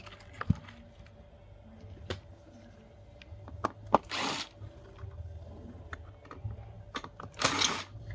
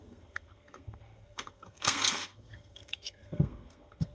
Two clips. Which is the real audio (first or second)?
first